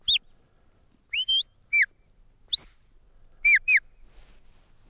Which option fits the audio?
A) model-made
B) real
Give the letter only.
B